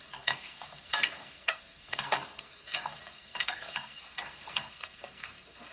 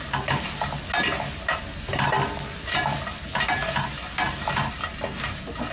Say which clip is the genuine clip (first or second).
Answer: second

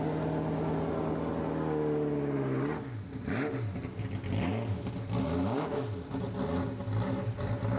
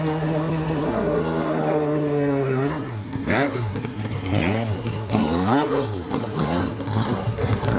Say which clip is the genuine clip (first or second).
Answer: first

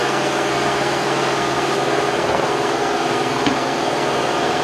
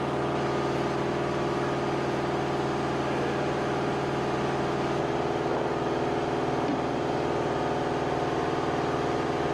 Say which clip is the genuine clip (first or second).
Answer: second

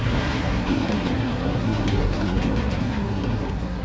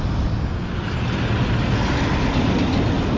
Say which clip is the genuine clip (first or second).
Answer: second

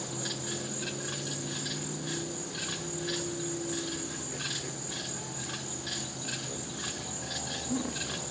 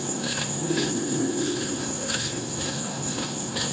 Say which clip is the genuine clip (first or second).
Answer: first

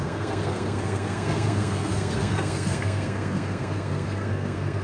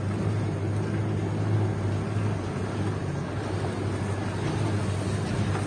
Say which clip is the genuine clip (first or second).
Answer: second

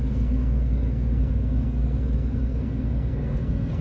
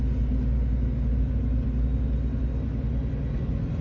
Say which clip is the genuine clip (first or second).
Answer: second